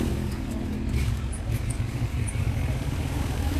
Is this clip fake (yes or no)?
yes